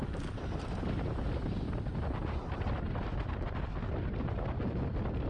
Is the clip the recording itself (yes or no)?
yes